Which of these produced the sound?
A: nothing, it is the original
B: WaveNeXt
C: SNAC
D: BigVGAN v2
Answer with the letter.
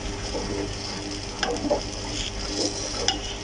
A